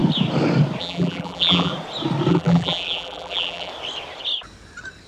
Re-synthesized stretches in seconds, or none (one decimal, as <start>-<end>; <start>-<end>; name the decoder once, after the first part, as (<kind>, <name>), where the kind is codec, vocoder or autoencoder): 0.8-1.7 (vocoder, BigVGAN v2); 2.3-3.7